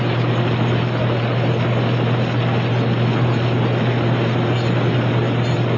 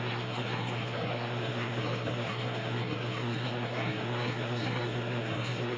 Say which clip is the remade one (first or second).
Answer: second